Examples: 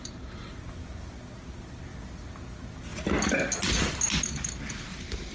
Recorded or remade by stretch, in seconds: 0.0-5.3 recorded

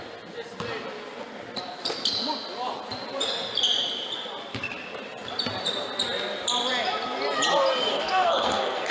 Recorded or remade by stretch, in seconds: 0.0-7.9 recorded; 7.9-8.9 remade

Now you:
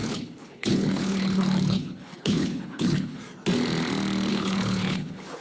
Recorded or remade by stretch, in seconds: 0.0-3.2 remade; 3.2-4.3 recorded; 4.3-5.4 remade

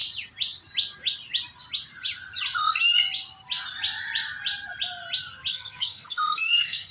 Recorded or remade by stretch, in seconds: 0.0-5.5 recorded; 5.5-6.9 remade

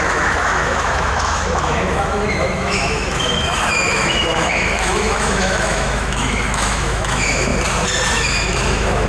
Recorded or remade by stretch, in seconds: 0.0-7.5 remade; 7.5-8.1 recorded; 8.1-9.1 remade